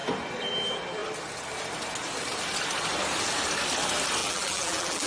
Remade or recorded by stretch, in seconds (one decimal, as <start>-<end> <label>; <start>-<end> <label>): 0.0-4.2 recorded; 4.2-5.1 remade